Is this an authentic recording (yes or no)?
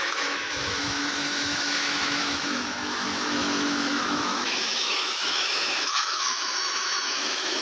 no